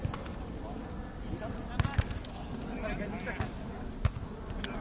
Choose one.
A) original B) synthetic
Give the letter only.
A